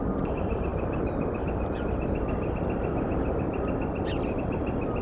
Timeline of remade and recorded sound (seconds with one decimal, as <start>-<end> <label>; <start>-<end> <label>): 0.0-5.0 recorded